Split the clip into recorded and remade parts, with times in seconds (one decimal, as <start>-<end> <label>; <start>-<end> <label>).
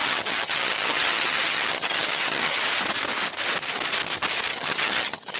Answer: 0.0-2.6 remade; 2.6-4.5 recorded; 4.5-5.4 remade